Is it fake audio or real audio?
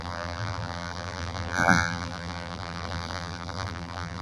fake